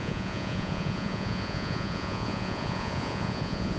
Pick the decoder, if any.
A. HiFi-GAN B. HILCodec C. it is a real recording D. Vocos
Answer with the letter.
D